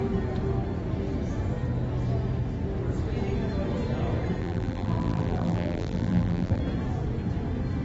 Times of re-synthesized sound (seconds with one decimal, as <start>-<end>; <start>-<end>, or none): 4.4-6.6